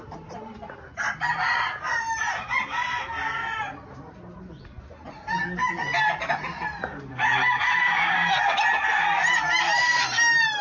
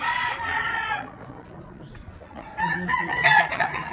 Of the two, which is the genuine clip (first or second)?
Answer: first